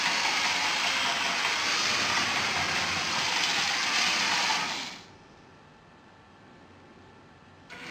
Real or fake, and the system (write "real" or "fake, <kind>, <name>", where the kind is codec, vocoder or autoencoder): real